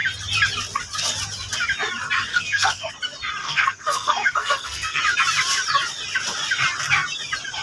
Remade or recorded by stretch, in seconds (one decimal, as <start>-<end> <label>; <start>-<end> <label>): 0.0-2.3 recorded; 2.3-2.9 remade; 2.9-3.4 recorded; 3.4-5.0 remade; 5.0-7.6 recorded